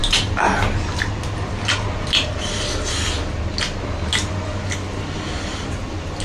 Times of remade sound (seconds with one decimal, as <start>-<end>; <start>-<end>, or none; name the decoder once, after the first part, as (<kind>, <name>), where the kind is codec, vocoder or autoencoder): none